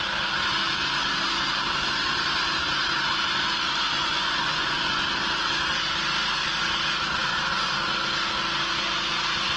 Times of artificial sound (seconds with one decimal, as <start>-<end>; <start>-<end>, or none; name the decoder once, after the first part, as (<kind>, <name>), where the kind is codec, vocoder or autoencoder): 4.0-5.0 (vocoder, Vocos)